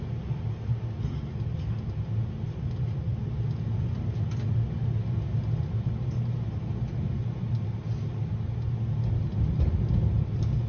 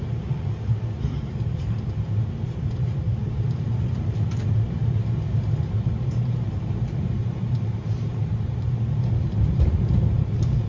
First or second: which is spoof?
second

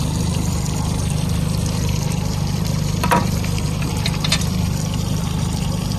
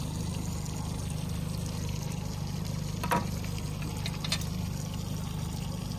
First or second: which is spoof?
first